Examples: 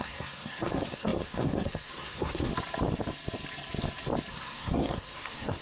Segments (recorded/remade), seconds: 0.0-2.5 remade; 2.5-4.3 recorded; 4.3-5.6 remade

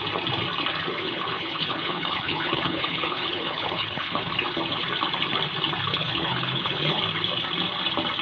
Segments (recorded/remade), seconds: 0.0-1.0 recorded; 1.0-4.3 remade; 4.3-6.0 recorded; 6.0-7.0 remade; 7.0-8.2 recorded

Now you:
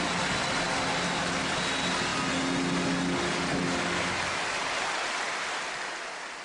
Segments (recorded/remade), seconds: 0.0-6.4 recorded